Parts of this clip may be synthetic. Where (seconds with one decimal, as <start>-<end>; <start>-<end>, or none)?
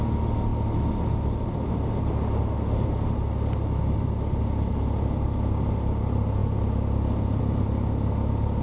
none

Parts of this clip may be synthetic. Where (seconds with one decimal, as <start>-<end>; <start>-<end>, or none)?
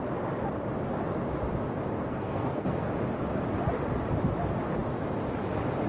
2.0-2.9